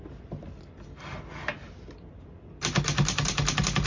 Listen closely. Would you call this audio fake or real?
real